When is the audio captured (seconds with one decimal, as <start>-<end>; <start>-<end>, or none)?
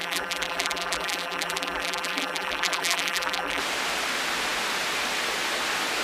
3.6-6.0